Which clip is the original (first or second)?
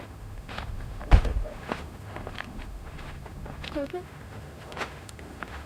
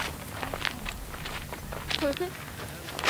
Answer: second